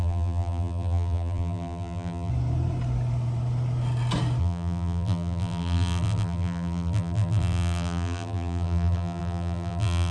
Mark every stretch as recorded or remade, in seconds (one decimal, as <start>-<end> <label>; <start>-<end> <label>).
0.0-2.3 remade; 2.3-4.4 recorded; 4.4-10.1 remade